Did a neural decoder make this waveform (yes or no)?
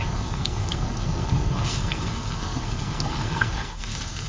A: yes